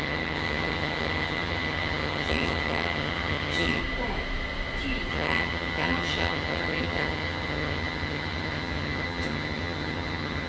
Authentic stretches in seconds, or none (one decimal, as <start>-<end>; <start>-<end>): 3.8-5.1